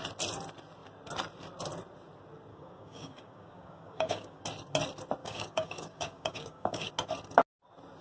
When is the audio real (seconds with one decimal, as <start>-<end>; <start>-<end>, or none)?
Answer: 0.0-2.5; 4.4-5.2; 6.9-8.0